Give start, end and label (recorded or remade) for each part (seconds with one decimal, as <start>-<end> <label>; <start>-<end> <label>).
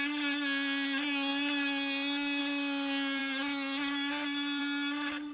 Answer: 0.0-5.3 recorded